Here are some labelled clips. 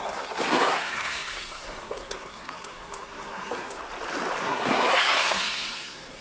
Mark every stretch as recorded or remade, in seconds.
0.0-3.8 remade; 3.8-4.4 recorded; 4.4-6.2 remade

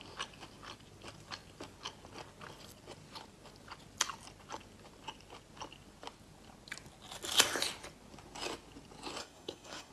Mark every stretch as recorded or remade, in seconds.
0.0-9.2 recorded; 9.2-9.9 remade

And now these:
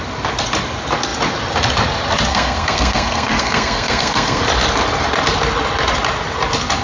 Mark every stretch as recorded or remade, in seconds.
0.0-2.3 recorded; 2.3-4.4 remade; 4.4-6.8 recorded

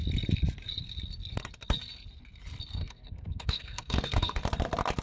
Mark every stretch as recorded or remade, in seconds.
0.0-2.8 recorded; 2.8-4.4 remade; 4.4-5.0 recorded

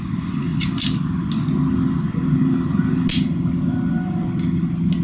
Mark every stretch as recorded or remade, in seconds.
0.0-5.0 recorded

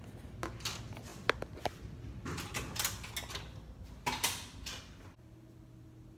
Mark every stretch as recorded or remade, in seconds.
0.0-6.2 recorded